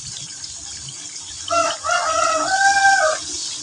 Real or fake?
real